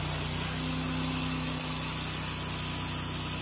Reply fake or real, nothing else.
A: real